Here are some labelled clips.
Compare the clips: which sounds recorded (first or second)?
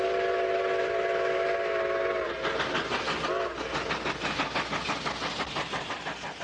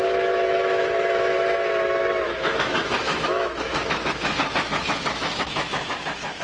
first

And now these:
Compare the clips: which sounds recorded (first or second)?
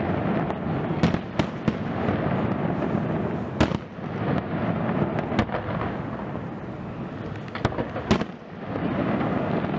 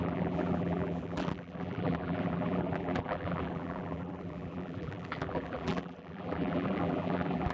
first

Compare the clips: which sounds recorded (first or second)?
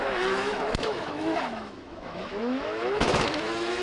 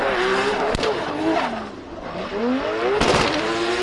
second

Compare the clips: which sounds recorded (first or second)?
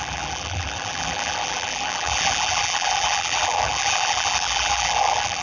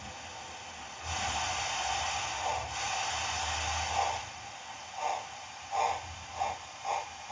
second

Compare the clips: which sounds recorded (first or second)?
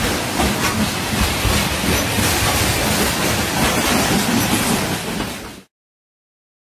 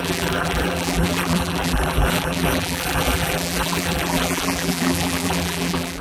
first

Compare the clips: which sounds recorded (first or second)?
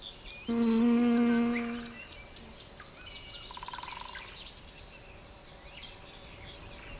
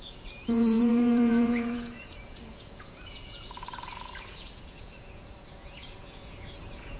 first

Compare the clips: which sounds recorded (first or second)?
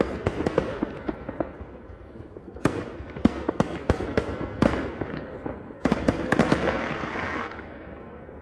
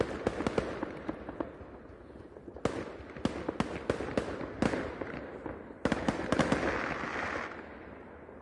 second